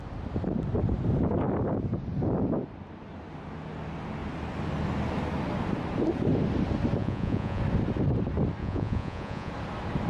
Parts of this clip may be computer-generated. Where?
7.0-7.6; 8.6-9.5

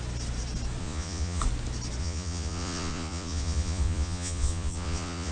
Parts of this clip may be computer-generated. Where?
0.8-1.4; 2.0-5.3

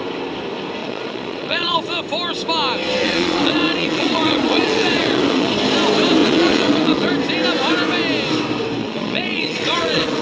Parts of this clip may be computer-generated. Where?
0.8-1.9; 3.0-5.5; 6.2-7.1; 8.8-10.2

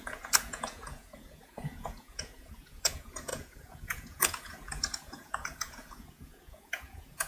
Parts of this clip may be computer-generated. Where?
0.0-7.3

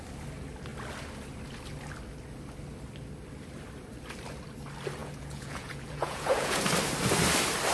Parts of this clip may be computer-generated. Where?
5.0-6.6

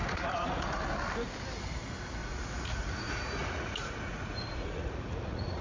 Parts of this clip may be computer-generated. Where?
0.0-0.8; 2.2-5.6

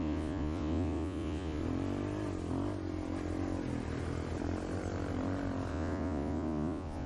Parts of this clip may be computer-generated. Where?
0.0-1.6; 5.7-7.1

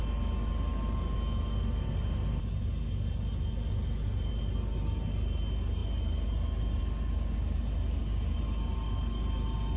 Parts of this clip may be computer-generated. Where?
none